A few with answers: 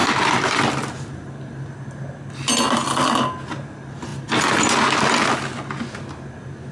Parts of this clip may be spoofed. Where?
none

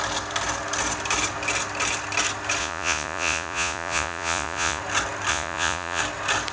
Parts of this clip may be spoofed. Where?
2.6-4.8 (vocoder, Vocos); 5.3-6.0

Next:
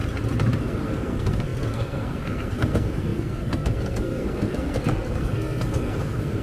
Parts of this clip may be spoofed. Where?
0.6-6.4 (codec, SNAC)

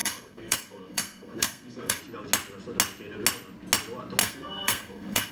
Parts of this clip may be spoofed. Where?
0.0-2.0 (codec, SNAC); 4.2-5.3

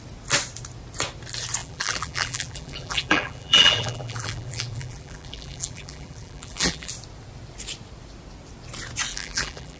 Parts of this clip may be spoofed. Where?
1.6-6.9 (vocoder, BigVGAN v2); 9.1-9.8

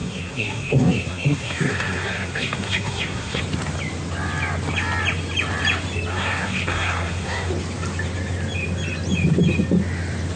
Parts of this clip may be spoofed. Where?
0.0-3.4 (codec, SNAC); 6.1-7.5

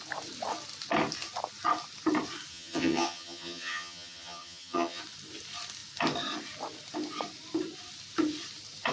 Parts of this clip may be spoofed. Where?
2.5-5.0 (vocoder, HiFi-GAN)

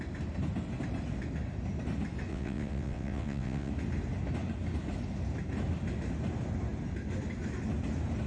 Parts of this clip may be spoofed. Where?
2.3-3.7 (vocoder, WaveNeXt)